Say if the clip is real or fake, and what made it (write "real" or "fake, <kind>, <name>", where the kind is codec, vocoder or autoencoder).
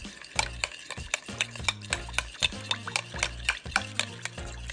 real